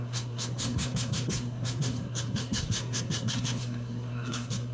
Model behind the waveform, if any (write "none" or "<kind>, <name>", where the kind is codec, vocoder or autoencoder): codec, SNAC